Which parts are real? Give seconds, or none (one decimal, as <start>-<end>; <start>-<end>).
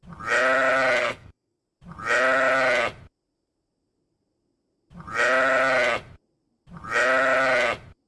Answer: 0.0-1.0; 1.6-8.1